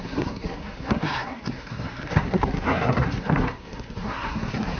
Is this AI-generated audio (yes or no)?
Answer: yes